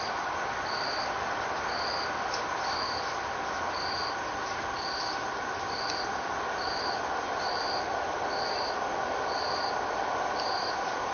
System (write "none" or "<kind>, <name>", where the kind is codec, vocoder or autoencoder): none